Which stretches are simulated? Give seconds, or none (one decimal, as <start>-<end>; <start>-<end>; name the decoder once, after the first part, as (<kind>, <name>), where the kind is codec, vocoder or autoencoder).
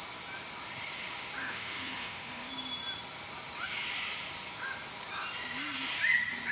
1.4-2.5 (autoencoder, DAC-VAE)